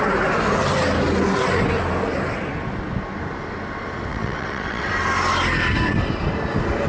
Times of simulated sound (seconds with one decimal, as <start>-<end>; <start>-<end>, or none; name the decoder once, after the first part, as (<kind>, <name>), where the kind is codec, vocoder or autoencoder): 4.1-4.9 (vocoder, WaveNeXt)